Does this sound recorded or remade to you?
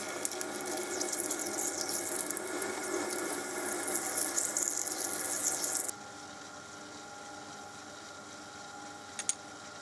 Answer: recorded